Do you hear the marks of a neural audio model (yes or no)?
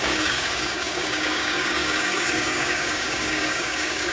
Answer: yes